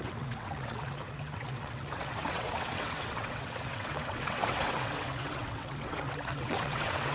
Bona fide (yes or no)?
no